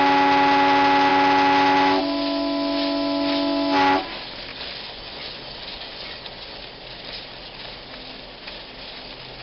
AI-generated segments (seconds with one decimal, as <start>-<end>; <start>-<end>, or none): 4.5-6.6